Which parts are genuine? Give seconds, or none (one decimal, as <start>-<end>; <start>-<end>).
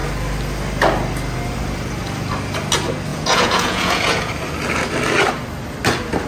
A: 0.0-3.1; 4.3-6.3